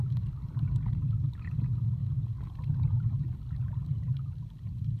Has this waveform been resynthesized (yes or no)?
no